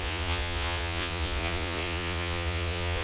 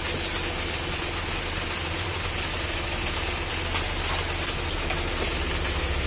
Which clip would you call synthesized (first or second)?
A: first